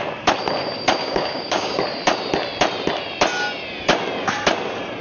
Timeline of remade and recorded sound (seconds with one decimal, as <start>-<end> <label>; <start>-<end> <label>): 0.0-1.0 recorded; 1.0-1.8 remade; 1.8-5.0 recorded